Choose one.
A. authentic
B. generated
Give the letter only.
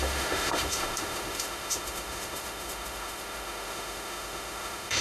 B